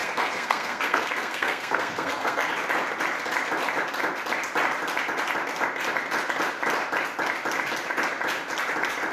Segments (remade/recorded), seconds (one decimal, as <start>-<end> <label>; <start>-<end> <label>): 0.0-2.5 remade; 2.5-9.1 recorded